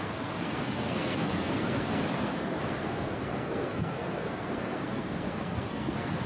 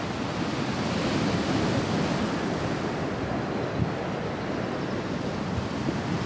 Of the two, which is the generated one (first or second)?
first